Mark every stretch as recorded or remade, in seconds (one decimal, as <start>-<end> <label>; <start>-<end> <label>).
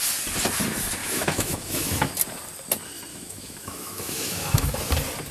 0.0-1.0 recorded; 1.0-2.1 remade; 2.1-3.1 recorded; 3.1-4.8 remade; 4.8-5.3 recorded